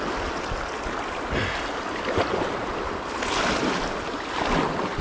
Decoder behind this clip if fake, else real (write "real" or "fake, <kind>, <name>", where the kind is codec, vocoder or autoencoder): real